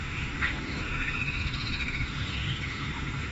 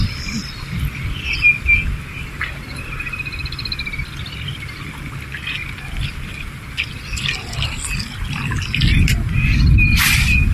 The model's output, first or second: first